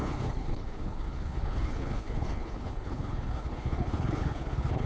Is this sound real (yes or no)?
no